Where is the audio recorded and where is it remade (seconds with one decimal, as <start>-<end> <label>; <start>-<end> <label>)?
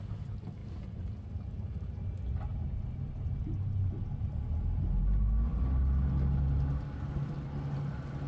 0.0-8.3 recorded